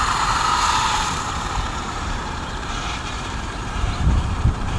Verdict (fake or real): fake